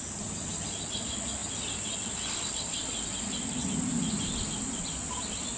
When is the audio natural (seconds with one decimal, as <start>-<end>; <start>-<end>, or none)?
0.0-5.6